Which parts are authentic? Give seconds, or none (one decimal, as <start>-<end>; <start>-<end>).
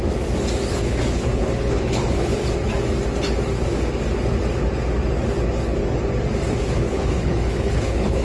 0.0-0.7; 2.4-6.6